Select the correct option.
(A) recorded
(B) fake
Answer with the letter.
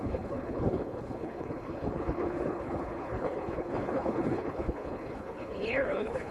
B